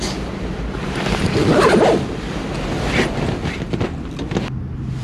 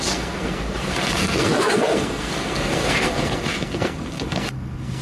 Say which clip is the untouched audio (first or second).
first